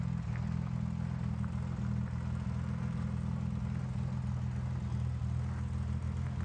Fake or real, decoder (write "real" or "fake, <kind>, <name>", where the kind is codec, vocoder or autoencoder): real